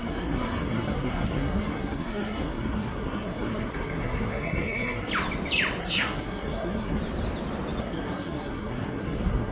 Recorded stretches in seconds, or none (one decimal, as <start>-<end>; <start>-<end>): 5.1-5.8; 7.0-7.8